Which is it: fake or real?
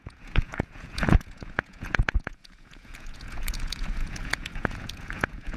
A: fake